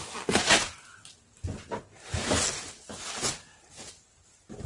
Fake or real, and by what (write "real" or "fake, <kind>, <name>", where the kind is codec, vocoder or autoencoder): real